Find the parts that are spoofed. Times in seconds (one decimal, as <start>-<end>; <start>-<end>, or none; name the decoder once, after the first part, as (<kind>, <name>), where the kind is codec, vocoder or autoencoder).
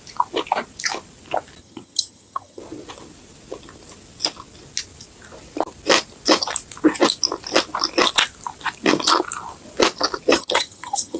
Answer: 1.6-2.6 (vocoder, HiFi-GAN); 10.3-11.2